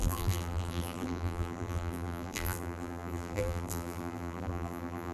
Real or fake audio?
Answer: fake